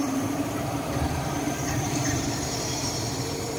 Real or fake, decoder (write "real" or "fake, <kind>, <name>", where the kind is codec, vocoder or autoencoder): fake, vocoder, BigVGAN v2